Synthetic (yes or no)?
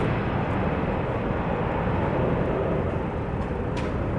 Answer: no